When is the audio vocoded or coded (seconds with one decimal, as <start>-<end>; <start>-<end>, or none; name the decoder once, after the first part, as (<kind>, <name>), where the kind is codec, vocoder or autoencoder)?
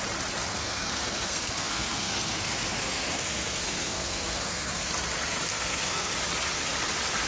0.5-4.9 (codec, SNAC); 5.5-6.1